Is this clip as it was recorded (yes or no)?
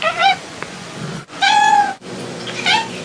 no